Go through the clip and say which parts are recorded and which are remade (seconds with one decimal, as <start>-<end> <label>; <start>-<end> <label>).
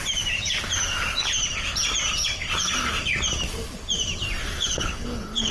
0.0-4.4 recorded; 4.4-5.5 remade